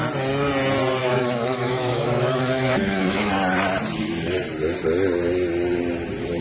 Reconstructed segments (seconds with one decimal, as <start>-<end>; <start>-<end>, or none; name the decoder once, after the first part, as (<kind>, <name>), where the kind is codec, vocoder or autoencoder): 1.0-3.3 (autoencoder, DAC-VAE)